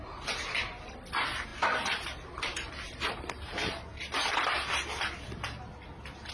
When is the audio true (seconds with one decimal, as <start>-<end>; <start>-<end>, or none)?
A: 0.0-6.3